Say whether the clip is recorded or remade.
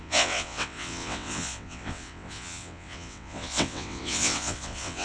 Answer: remade